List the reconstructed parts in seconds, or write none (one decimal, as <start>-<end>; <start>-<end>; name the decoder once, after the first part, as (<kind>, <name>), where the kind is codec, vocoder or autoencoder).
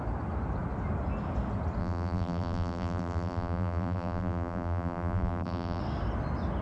1.8-5.8 (vocoder, BigVGAN v2)